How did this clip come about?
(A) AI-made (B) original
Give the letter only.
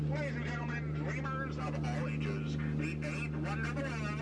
B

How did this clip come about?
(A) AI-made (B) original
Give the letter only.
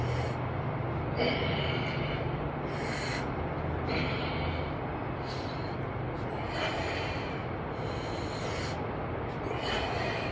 B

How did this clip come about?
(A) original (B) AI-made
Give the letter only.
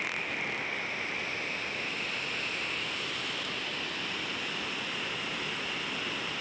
A